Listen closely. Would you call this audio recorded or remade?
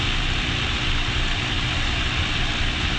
recorded